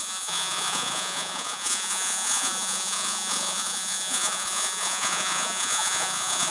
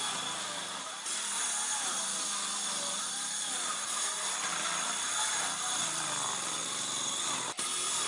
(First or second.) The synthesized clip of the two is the first